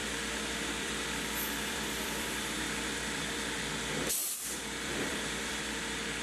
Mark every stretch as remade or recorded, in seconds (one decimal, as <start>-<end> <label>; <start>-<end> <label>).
0.0-3.6 remade; 3.6-4.2 recorded; 4.2-5.6 remade; 5.6-6.2 recorded